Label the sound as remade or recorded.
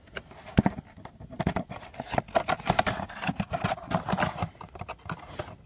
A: recorded